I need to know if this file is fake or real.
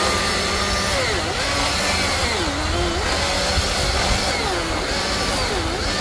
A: real